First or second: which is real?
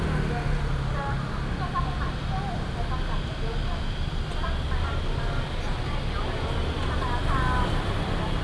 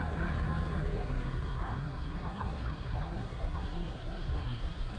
first